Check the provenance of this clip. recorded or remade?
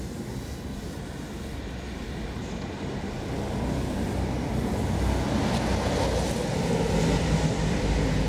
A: recorded